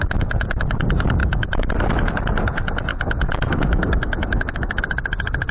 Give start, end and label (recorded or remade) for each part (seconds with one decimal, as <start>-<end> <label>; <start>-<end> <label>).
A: 0.0-1.2 recorded; 1.2-1.7 remade; 1.7-2.9 recorded; 2.9-4.8 remade; 4.8-5.5 recorded